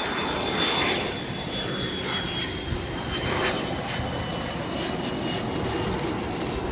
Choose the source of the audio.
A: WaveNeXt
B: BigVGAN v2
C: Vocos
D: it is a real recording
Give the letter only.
D